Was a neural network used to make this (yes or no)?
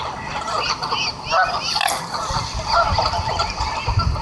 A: no